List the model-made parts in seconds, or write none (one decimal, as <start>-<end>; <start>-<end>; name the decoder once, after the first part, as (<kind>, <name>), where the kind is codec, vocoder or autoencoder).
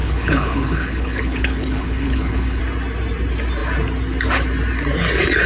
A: 0.0-2.6 (codec, HILCodec)